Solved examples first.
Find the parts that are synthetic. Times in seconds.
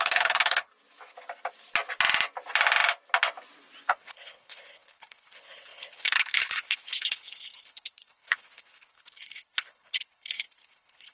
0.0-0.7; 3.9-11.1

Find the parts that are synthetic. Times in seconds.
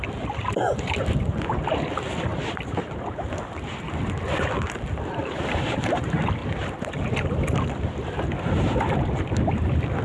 5.2-6.0; 6.4-7.3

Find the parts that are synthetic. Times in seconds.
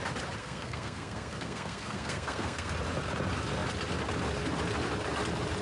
0.4-2.7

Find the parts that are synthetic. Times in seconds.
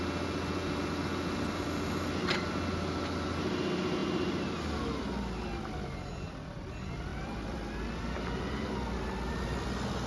none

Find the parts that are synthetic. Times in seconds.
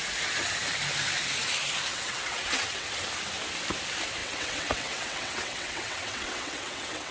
1.9-2.9; 4.2-7.1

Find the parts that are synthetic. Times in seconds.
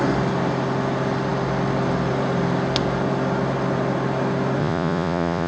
4.6-5.5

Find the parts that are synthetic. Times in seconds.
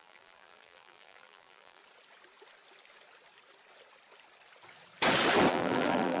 0.0-1.8; 5.5-6.2